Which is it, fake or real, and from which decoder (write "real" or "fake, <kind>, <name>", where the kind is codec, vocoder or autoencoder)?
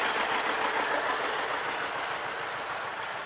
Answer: real